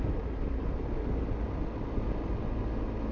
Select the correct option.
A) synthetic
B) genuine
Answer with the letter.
B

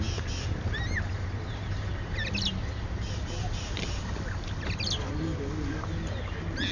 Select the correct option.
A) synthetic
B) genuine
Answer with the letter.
B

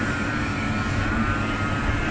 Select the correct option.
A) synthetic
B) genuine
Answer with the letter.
A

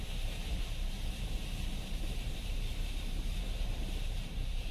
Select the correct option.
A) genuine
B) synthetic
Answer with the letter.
B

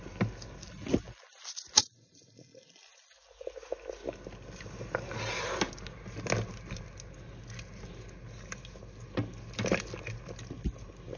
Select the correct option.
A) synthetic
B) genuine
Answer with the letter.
B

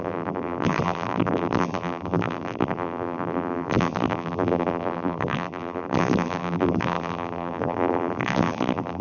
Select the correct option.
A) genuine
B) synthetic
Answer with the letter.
B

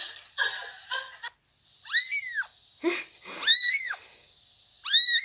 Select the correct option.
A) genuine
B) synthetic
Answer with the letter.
A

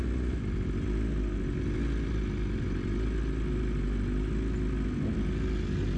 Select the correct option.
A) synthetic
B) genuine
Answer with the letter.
B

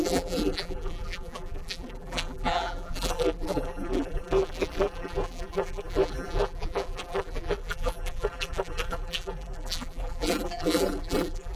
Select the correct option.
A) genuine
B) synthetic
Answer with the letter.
B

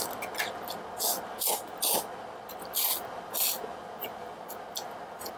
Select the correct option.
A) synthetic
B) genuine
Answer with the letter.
B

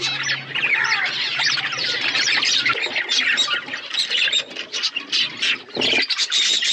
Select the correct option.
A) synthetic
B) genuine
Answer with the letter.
B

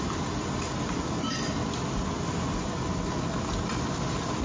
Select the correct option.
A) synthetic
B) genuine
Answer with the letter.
B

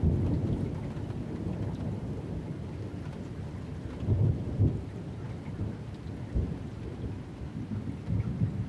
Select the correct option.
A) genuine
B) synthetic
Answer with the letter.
A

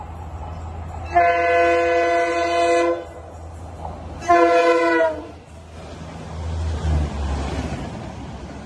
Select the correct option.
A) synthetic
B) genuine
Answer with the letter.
B